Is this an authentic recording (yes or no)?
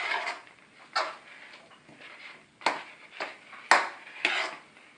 yes